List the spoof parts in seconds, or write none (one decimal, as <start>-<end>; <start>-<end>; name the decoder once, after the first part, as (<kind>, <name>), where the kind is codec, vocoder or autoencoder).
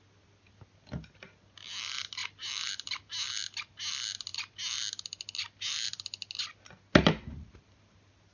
none